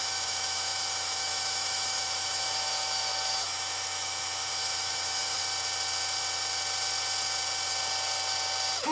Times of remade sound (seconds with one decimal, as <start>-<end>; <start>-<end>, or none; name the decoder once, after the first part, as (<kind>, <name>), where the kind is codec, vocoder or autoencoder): 0.0-5.4 (autoencoder, DAC-VAE)